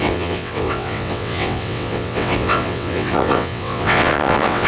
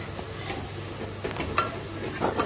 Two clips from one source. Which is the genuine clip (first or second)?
second